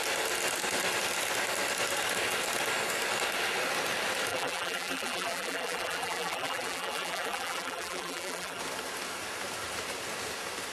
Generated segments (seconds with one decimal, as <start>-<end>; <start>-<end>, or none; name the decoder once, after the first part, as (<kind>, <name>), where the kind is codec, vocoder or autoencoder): 4.3-8.6 (vocoder, BigVGAN v2)